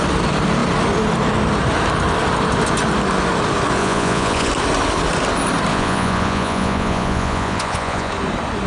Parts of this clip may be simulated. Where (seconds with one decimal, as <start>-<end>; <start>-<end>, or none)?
3.8-4.5; 5.7-8.1